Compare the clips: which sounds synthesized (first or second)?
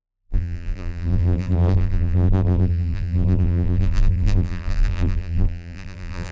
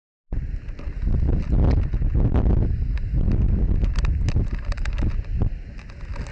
first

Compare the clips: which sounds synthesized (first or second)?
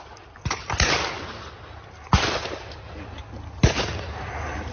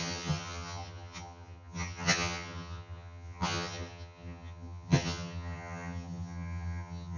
second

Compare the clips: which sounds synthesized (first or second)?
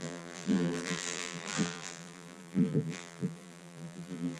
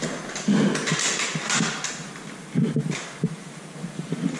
first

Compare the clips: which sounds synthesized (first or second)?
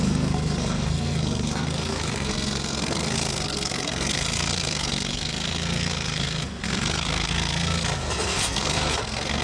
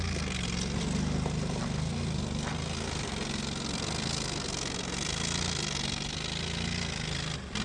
first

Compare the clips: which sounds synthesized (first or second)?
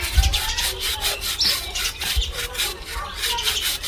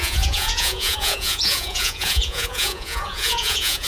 second